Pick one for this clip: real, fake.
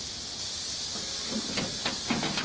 real